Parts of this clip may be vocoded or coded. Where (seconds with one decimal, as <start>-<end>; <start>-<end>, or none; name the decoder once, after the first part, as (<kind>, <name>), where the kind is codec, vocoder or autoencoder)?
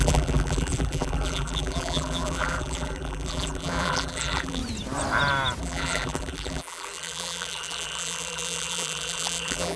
0.0-4.6 (vocoder, BigVGAN v2); 5.6-9.8